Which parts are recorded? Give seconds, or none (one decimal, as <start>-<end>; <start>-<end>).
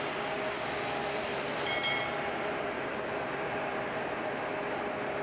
0.0-1.0; 4.1-5.2